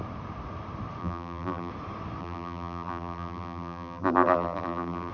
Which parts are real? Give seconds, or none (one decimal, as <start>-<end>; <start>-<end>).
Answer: 0.0-1.0; 1.7-2.2